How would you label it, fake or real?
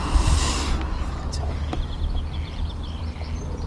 real